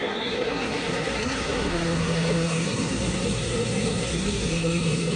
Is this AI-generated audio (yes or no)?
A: yes